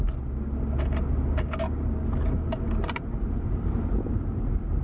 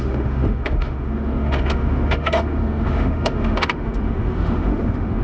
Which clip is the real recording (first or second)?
first